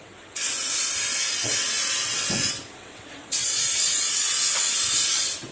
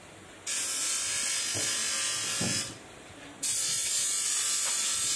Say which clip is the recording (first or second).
second